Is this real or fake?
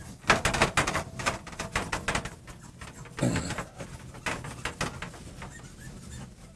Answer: real